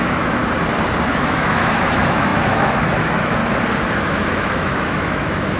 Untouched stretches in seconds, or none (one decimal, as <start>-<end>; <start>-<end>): 0.4-1.1; 3.4-4.0